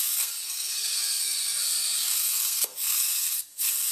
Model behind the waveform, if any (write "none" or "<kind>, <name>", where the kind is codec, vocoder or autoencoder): codec, SNAC